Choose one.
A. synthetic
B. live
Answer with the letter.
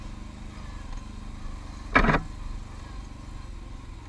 B